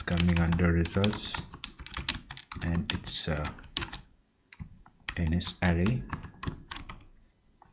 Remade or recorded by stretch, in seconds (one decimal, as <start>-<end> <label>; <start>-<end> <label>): 0.0-3.0 recorded; 3.0-7.3 remade; 7.3-7.7 recorded

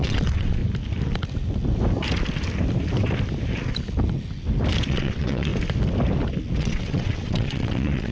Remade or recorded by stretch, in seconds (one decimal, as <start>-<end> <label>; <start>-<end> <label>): 0.0-0.6 remade; 0.6-4.8 recorded; 4.8-5.5 remade; 5.5-6.6 recorded; 6.6-8.1 remade

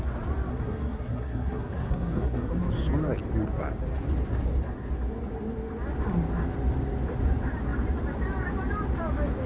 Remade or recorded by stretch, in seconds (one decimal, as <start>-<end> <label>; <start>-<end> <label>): 0.0-0.5 recorded; 0.5-2.5 remade; 2.5-9.5 recorded

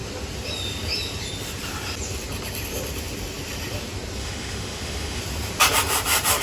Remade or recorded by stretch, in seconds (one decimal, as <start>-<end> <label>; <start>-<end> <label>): 0.0-4.2 recorded; 4.2-5.2 remade; 5.2-6.4 recorded

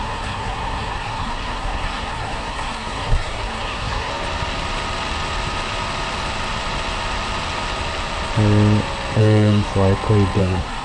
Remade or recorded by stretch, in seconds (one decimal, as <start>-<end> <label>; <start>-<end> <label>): 0.0-4.1 remade; 4.1-9.2 recorded; 9.2-9.7 remade; 9.7-10.4 recorded; 10.4-10.8 remade

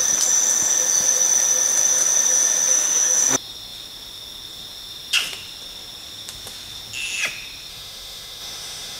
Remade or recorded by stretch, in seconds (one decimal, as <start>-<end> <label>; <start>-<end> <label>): 0.0-2.7 recorded; 2.7-3.2 remade; 3.2-7.7 recorded; 7.7-9.0 remade

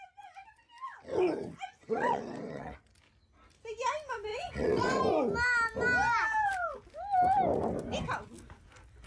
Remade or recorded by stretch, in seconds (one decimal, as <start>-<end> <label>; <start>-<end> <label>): 0.0-1.8 recorded; 1.8-2.8 remade; 2.8-4.3 recorded; 4.3-5.0 remade; 5.0-9.1 recorded